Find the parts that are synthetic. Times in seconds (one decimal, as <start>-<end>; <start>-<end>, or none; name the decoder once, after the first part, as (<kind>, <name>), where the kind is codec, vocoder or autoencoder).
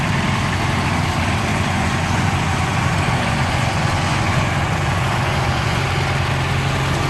1.5-5.8 (vocoder, Vocos)